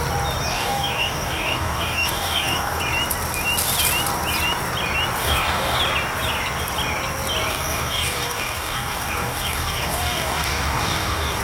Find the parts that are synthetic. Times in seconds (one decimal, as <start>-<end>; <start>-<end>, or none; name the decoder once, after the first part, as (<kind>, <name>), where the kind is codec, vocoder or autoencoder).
0.5-2.8 (codec, DAC); 5.2-5.8; 7.5-11.4